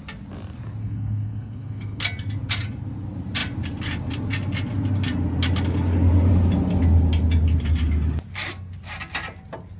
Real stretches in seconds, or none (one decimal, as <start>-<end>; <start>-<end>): 0.0-0.8; 2.0-9.8